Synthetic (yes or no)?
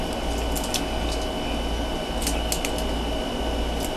no